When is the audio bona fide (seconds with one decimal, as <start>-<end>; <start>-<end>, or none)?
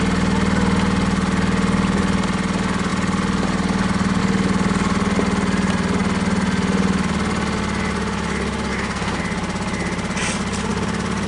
0.0-8.7; 9.2-11.3